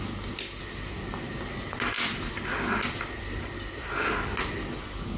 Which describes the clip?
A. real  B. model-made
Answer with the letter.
A